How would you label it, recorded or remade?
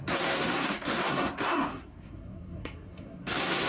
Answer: remade